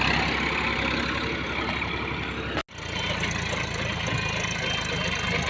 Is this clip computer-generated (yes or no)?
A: no